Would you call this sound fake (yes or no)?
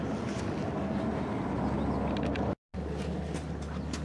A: no